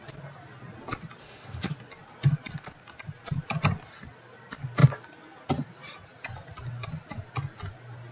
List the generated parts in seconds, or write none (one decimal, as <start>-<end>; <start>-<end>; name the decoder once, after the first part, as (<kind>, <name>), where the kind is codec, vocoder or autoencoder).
1.2-1.7 (autoencoder, DAC-VAE)